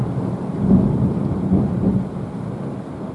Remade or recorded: recorded